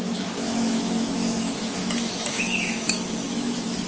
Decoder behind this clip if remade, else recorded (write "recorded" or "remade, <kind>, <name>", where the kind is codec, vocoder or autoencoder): remade, autoencoder, DAC-VAE